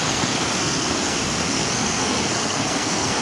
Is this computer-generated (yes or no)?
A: yes